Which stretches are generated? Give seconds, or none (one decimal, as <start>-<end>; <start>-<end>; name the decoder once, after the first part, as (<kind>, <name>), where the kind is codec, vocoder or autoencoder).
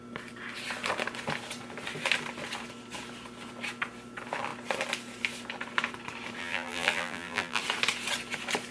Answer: 6.4-7.6 (vocoder, BigVGAN v2)